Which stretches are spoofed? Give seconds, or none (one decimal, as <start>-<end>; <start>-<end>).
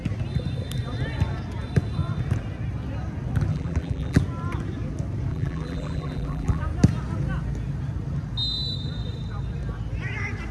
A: 3.5-4.2; 5.3-6.6